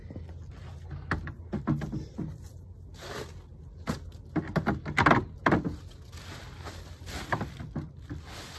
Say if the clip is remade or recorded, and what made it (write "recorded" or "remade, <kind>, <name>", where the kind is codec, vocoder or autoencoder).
recorded